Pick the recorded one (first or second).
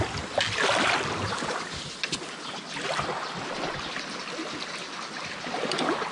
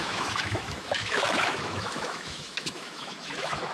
first